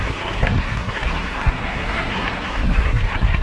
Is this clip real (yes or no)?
no